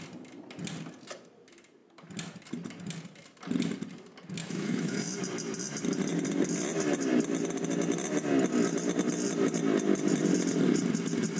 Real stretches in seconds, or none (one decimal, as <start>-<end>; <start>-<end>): 0.0-4.4; 5.2-11.4

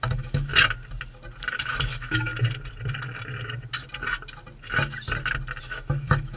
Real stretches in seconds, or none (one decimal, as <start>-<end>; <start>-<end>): 0.5-1.5; 2.3-5.6

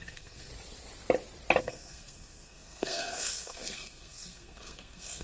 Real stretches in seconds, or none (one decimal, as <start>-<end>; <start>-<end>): 0.5-1.6

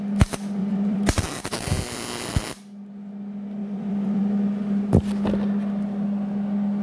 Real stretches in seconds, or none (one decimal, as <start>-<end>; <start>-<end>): 0.0-0.6; 1.8-3.6; 4.2-6.8